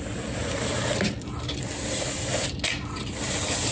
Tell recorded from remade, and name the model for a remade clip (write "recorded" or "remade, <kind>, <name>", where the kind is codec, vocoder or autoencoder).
recorded